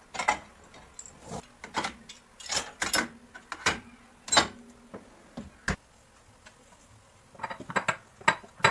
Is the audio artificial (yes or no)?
no